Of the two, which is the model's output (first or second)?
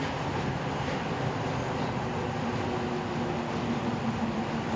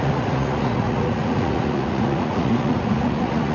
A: second